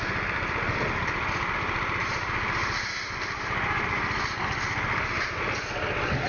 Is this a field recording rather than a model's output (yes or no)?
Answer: yes